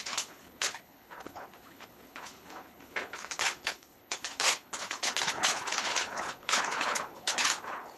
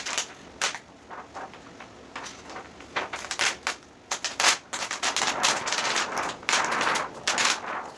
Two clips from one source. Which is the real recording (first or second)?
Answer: second